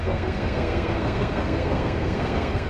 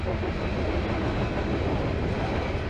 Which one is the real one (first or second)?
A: second